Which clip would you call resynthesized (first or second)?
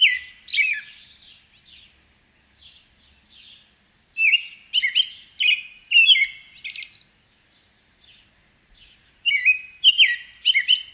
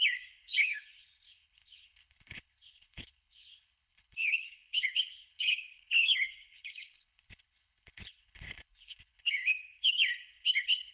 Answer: second